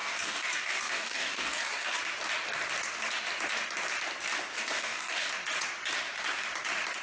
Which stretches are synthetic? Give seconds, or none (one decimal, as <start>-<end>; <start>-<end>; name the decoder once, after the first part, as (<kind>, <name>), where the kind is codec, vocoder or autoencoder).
0.0-2.0 (codec, DAC); 4.5-5.3